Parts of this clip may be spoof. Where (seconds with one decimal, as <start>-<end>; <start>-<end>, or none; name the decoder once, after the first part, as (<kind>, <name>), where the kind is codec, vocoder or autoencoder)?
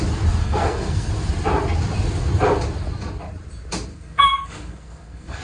0.4-1.1 (codec, SNAC); 3.9-5.4